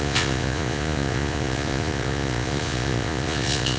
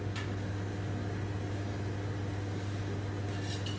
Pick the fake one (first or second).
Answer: first